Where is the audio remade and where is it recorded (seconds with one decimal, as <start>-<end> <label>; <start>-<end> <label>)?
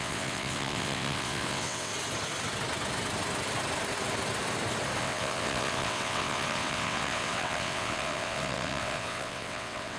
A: 0.0-1.9 remade; 1.9-5.0 recorded; 5.0-10.0 remade